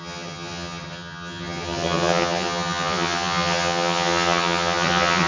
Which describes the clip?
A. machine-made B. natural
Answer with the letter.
A